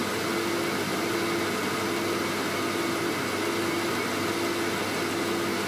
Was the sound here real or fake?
real